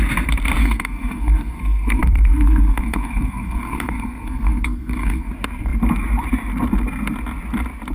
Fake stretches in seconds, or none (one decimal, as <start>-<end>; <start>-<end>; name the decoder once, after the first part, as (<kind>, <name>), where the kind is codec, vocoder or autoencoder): 0.6-5.3 (codec, SNAC)